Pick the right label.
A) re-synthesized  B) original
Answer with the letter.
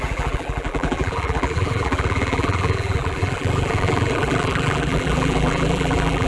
A